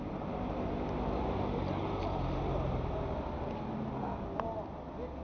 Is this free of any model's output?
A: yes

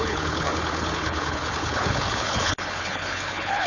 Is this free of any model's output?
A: no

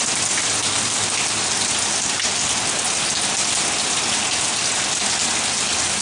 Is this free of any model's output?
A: yes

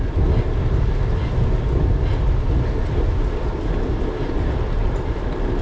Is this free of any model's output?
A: yes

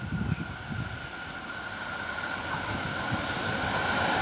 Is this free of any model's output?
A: yes